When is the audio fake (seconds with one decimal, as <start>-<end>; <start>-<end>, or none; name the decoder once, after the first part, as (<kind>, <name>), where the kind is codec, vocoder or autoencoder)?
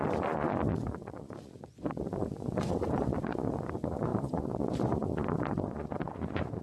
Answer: 0.0-6.6 (vocoder, Vocos)